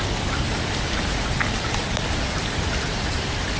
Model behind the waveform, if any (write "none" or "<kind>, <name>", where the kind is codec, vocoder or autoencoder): none